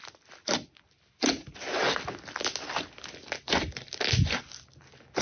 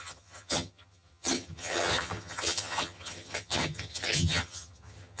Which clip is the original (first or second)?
first